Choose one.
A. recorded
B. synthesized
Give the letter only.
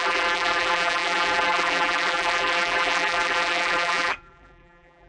B